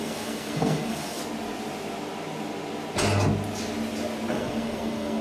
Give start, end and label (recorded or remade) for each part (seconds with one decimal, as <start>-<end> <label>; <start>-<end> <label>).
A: 0.0-1.2 remade; 1.2-4.3 recorded; 4.3-5.2 remade